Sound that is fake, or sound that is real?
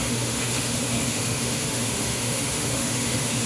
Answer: fake